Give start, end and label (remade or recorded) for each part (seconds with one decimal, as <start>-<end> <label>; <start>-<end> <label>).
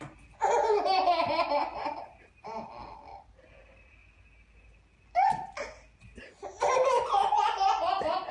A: 0.0-8.3 recorded